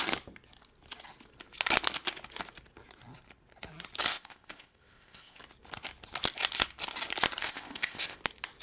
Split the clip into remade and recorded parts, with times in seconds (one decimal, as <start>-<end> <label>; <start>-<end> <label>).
0.0-4.1 recorded; 4.1-5.4 remade; 5.4-7.4 recorded; 7.4-8.2 remade; 8.2-8.6 recorded